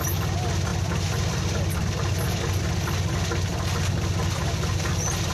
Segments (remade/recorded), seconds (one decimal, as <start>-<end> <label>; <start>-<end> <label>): 0.0-5.3 recorded